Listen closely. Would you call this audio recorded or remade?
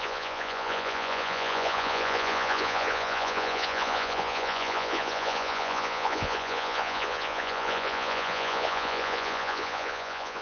remade